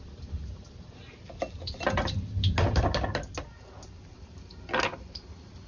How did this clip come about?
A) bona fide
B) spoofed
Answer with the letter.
A